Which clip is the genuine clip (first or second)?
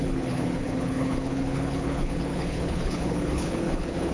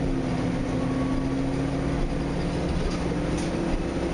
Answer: second